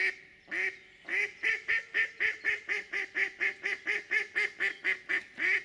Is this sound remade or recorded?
recorded